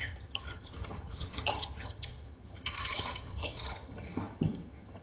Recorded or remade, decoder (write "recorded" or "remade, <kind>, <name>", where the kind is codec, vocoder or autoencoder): remade, vocoder, HiFi-GAN